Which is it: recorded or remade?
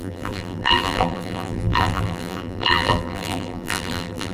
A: remade